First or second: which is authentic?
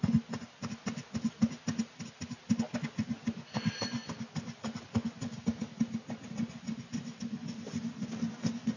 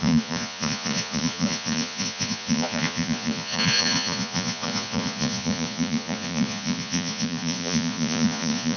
first